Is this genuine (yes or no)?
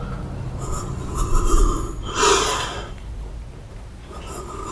yes